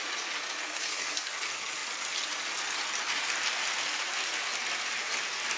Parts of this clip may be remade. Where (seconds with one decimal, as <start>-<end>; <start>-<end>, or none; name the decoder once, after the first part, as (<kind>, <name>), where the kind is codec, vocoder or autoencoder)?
0.6-1.3 (codec, SNAC)